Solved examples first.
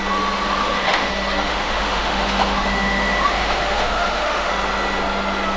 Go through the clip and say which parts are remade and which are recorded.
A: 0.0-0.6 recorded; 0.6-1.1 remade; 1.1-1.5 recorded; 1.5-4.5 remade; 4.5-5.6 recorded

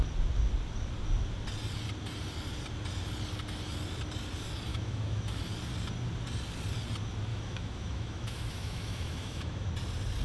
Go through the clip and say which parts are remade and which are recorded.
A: 0.0-4.7 recorded; 4.7-5.4 remade; 5.4-7.3 recorded; 7.3-9.7 remade; 9.7-10.2 recorded

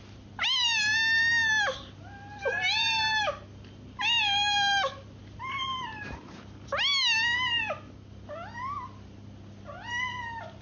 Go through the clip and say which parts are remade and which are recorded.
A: 0.0-10.6 recorded

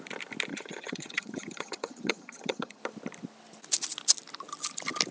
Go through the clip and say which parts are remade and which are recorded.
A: 0.0-0.5 recorded; 0.5-2.8 remade; 2.8-5.1 recorded